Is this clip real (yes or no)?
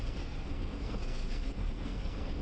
no